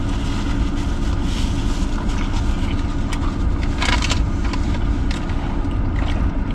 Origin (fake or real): real